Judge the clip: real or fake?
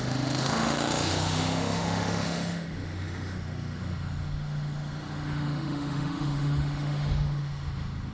fake